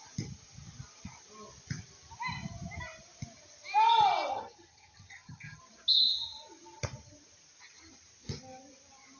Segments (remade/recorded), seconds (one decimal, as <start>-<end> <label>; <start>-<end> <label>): 0.0-4.3 recorded; 4.3-5.6 remade; 5.6-9.2 recorded